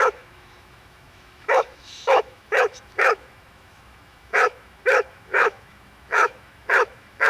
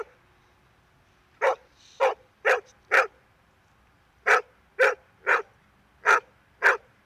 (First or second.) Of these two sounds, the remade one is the first